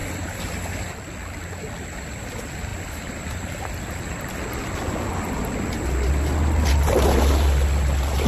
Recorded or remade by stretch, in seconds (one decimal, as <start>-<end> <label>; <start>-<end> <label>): 0.0-8.3 recorded